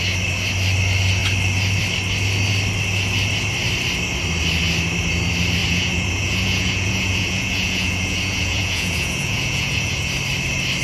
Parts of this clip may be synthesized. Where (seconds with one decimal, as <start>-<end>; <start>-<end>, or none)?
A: 5.6-10.1

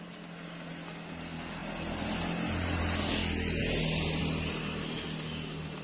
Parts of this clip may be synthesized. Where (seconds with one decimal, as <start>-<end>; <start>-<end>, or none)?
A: none